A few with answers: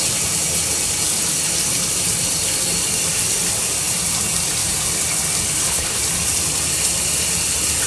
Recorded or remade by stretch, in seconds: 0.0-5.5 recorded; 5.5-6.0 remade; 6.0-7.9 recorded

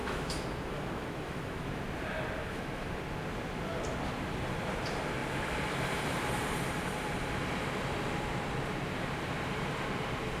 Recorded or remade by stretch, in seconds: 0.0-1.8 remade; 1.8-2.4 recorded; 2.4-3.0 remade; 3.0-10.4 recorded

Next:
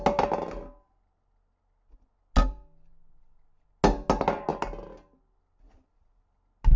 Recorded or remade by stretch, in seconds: 0.0-6.8 recorded